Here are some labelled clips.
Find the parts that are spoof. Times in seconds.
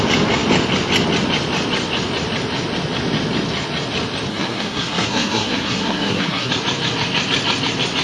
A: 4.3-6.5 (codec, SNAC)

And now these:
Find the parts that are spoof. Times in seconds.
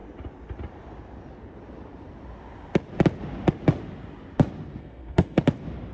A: 4.8-5.4 (codec, SNAC)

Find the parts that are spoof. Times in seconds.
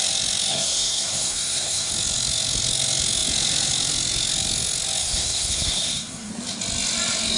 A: 0.5-1.9 (codec, SNAC); 5.0-6.3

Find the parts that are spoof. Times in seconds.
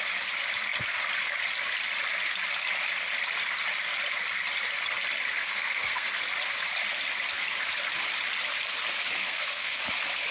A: 5.4-6.1 (codec, SNAC); 9.2-9.8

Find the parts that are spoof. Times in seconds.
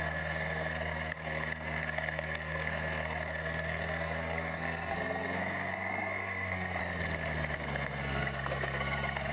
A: 0.0-6.8 (codec, SNAC); 7.6-9.3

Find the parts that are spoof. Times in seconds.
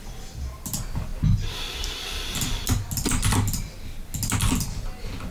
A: none